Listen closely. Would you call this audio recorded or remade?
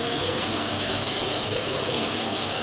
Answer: remade